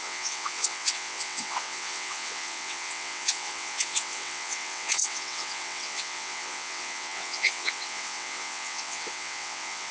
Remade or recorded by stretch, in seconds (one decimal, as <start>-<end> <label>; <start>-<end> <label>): 0.0-9.9 remade